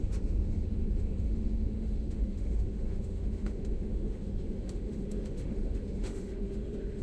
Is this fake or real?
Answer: fake